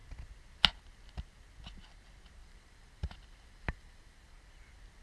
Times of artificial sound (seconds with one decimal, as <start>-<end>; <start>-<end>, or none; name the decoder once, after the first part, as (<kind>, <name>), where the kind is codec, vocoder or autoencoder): 2.4-4.5 (vocoder, BigVGAN v2)